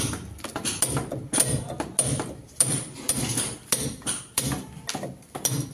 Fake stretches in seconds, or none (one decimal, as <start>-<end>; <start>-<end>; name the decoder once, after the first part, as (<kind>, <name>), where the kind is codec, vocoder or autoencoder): none